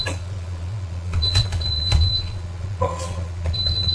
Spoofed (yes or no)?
yes